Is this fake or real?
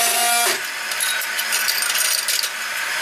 real